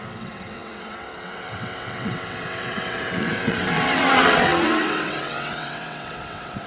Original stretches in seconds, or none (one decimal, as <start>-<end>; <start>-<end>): none